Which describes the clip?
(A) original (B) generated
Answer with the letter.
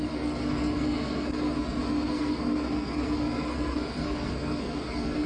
B